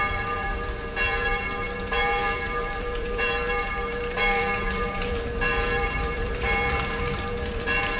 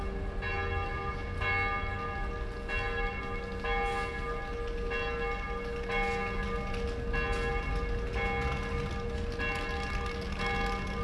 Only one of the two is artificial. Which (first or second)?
first